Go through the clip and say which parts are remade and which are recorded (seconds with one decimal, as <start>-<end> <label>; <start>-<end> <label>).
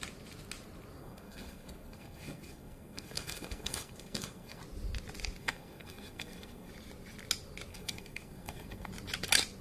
0.0-1.0 recorded; 1.0-4.6 remade; 4.6-5.4 recorded; 5.4-6.7 remade; 6.7-7.7 recorded; 7.7-8.9 remade; 8.9-9.6 recorded